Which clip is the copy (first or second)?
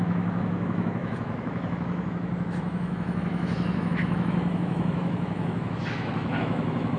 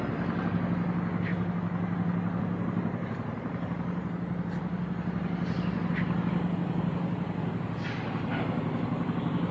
first